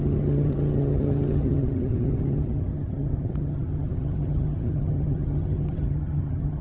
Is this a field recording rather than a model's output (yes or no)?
no